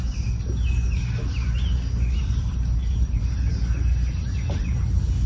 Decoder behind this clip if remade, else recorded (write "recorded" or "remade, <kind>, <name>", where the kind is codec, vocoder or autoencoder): recorded